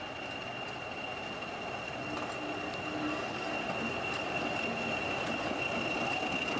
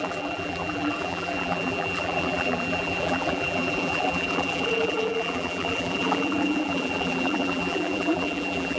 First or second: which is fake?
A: second